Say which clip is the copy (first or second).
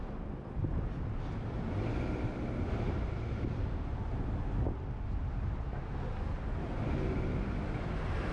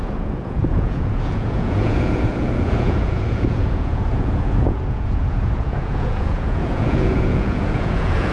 second